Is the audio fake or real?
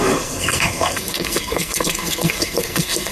fake